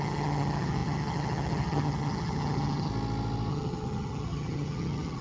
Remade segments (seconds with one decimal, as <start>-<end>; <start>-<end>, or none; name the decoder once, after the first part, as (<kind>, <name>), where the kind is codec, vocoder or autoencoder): 0.0-2.9 (vocoder, HiFi-GAN); 3.5-5.2